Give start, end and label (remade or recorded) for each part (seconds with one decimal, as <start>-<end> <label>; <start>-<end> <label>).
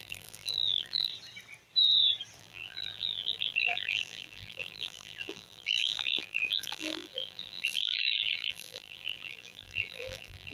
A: 0.0-1.1 remade; 1.1-2.4 recorded; 2.4-10.5 remade